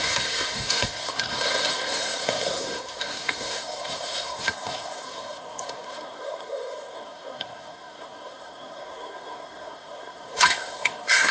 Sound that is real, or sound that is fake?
fake